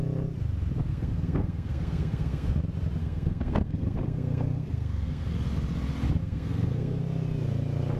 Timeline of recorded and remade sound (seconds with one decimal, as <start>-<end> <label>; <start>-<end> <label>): 0.0-0.9 recorded; 0.9-2.6 remade; 2.6-3.0 recorded; 3.0-5.3 remade; 5.3-6.2 recorded; 6.2-7.0 remade; 7.0-8.0 recorded